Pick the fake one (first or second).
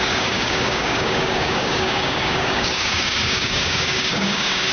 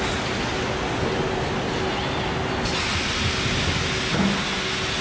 first